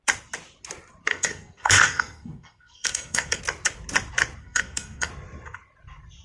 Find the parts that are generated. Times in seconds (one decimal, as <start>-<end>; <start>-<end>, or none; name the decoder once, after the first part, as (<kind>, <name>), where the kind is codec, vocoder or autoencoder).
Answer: 1.1-3.4 (codec, SNAC); 4.4-5.1